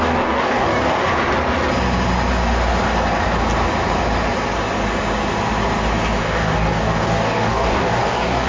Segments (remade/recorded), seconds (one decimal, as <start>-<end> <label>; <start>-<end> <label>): 0.0-1.1 remade; 1.1-6.2 recorded; 6.2-8.5 remade

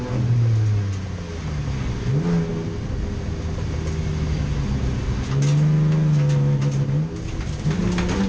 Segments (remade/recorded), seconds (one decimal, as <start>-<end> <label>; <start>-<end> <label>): 0.0-8.3 recorded

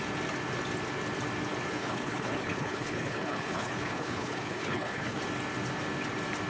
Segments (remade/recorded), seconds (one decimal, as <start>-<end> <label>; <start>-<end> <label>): 0.0-1.7 recorded; 1.7-5.2 remade; 5.2-6.5 recorded